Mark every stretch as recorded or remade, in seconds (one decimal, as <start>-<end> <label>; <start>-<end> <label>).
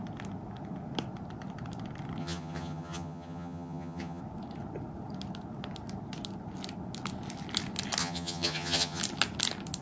0.0-2.2 recorded; 2.2-4.2 remade; 4.2-8.0 recorded; 8.0-9.0 remade; 9.0-9.8 recorded